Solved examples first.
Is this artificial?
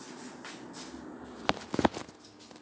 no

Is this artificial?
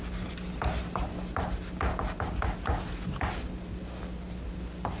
no